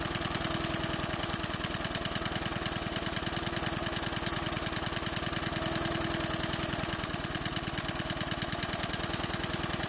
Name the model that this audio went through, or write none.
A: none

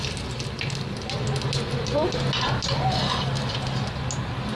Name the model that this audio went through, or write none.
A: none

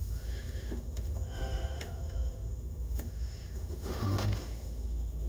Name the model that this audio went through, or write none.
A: autoencoder, DAC-VAE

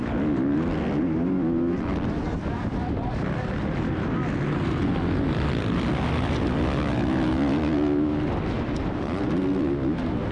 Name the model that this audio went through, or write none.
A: none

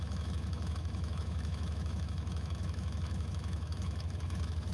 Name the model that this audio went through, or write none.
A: autoencoder, DAC-VAE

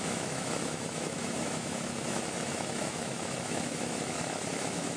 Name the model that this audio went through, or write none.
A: autoencoder, DAC-VAE